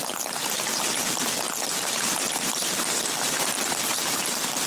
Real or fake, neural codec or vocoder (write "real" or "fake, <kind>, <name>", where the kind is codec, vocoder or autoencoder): fake, vocoder, BigVGAN v2